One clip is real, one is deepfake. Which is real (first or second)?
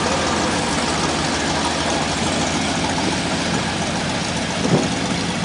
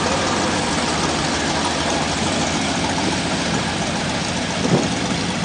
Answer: first